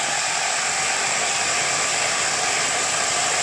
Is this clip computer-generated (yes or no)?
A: no